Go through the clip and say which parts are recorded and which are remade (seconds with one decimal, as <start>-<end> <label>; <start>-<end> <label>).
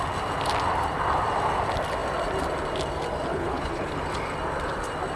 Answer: 0.0-3.3 recorded; 3.3-3.9 remade; 3.9-5.2 recorded